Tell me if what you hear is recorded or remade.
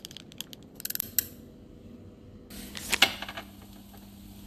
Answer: recorded